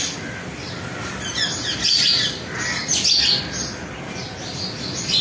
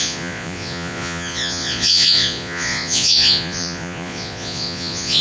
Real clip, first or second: first